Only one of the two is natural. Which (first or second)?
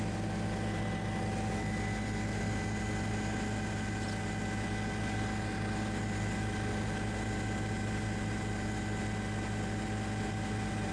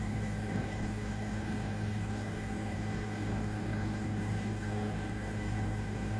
first